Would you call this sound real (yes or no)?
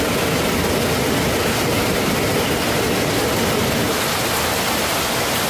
yes